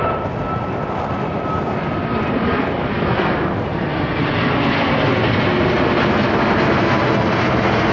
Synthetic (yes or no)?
no